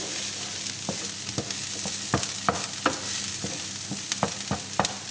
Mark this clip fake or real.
real